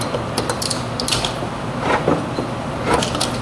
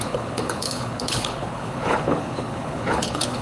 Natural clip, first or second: first